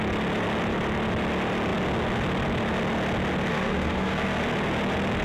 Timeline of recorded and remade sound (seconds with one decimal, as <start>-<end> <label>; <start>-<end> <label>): 0.0-3.5 recorded; 3.5-4.4 remade; 4.4-5.2 recorded

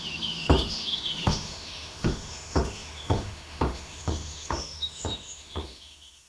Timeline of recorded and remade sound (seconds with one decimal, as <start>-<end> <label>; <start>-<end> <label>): 0.0-6.3 remade

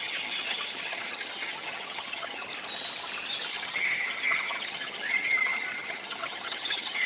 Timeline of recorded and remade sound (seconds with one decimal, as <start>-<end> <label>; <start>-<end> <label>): 0.0-2.5 remade; 2.5-3.5 recorded; 3.5-7.1 remade